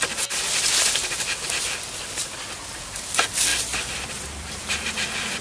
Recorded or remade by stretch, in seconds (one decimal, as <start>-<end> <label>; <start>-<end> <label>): 0.0-1.0 recorded; 1.0-1.8 remade; 1.8-3.5 recorded; 3.5-4.9 remade; 4.9-5.4 recorded